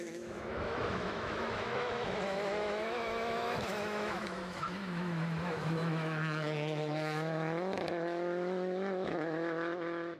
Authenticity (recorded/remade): remade